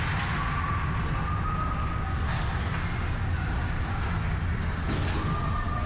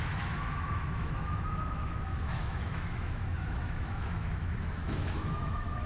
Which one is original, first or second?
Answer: first